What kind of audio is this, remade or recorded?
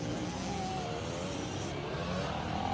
recorded